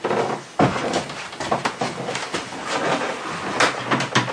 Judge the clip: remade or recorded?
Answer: recorded